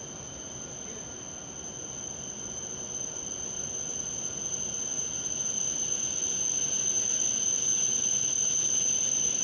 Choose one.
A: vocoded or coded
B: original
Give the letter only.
B